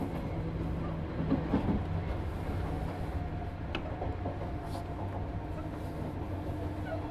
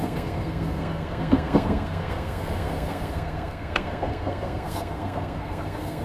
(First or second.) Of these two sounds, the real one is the first